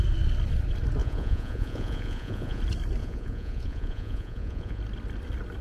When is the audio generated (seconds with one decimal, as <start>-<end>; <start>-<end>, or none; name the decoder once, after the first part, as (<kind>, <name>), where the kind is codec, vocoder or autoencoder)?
1.0-2.6 (vocoder, Vocos); 3.0-4.8